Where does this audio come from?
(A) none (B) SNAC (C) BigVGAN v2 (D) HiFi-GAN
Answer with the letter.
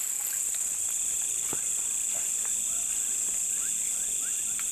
A